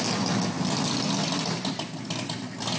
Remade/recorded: recorded